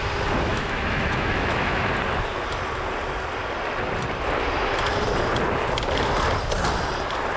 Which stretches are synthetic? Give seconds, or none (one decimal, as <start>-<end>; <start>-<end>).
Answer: 0.5-1.9